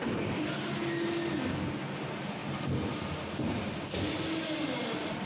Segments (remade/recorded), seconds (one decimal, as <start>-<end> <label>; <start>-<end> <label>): 0.0-5.3 recorded